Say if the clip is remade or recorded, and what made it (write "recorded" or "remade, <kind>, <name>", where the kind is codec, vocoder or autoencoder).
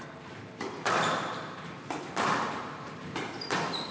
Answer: remade, vocoder, BigVGAN v2